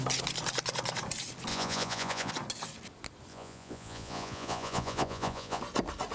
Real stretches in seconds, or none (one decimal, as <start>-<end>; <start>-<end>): 0.0-1.5; 2.3-3.3; 5.6-6.1